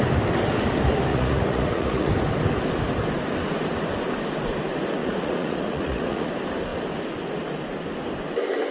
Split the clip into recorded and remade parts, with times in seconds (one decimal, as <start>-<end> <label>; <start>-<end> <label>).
0.0-1.1 recorded; 1.1-2.1 remade; 2.1-5.0 recorded; 5.0-6.3 remade; 6.3-8.7 recorded